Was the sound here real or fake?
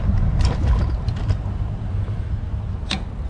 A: real